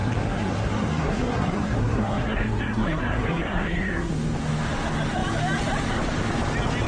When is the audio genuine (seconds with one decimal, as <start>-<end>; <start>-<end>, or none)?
4.1-6.9